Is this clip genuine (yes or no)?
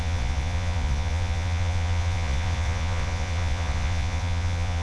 no